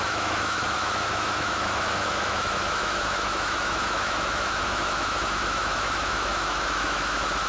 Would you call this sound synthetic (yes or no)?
yes